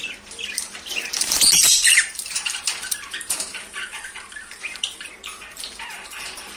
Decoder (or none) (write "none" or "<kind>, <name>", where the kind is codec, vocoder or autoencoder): vocoder, BigVGAN v2